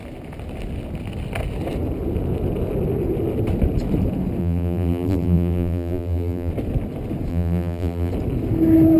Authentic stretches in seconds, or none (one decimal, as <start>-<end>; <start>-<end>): 0.0-4.4; 6.5-7.3; 8.1-9.0